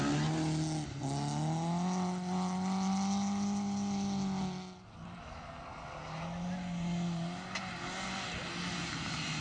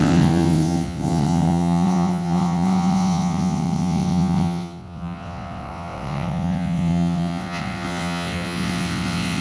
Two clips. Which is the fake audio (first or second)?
second